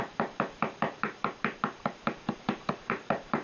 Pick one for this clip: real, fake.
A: fake